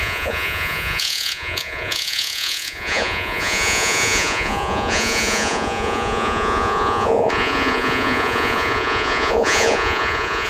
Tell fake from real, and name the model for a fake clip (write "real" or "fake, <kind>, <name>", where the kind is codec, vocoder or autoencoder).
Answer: fake, vocoder, Vocos